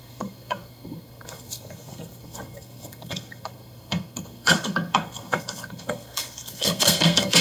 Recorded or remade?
remade